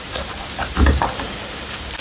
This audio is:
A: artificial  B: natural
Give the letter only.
A